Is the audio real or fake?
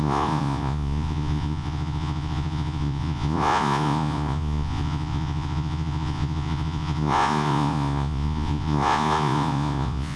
fake